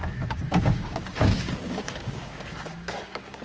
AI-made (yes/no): yes